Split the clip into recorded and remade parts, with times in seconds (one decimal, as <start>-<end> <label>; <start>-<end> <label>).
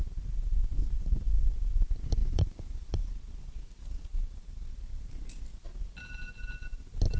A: 0.0-2.2 recorded; 2.2-3.1 remade; 3.1-4.1 recorded; 4.1-5.2 remade; 5.2-7.2 recorded